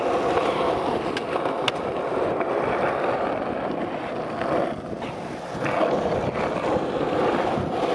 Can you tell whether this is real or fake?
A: real